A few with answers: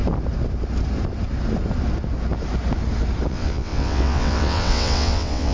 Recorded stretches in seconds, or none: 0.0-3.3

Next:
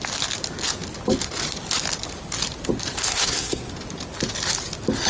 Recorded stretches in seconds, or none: 0.0-3.1; 3.7-5.1

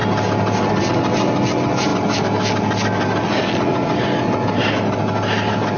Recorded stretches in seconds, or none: 0.0-5.8